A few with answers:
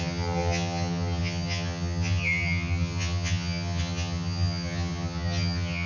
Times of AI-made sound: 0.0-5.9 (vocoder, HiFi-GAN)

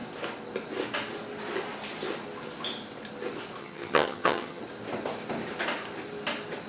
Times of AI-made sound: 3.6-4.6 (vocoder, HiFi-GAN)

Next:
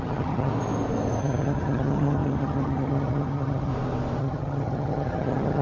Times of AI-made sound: 0.0-0.5 (vocoder, HiFi-GAN); 1.2-3.7; 4.2-5.6